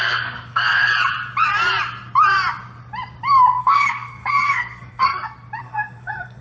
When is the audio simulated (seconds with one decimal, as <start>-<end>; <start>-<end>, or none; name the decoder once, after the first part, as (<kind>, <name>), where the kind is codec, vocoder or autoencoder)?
0.0-0.9 (codec, SNAC); 3.6-5.1; 5.6-6.4